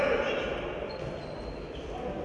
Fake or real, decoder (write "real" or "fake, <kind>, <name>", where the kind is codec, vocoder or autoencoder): real